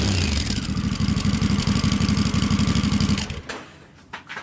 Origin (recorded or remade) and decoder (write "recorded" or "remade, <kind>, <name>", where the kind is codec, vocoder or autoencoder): recorded